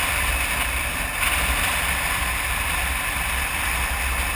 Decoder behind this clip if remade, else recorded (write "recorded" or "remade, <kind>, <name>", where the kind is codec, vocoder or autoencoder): recorded